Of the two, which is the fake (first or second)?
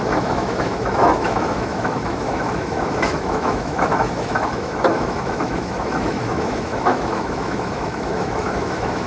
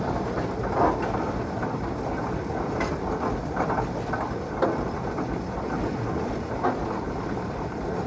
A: first